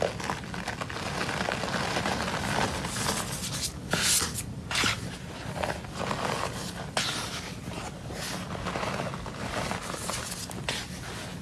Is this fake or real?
real